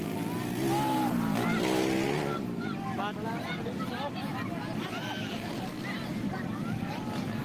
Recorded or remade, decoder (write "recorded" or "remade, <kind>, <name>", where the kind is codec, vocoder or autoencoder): recorded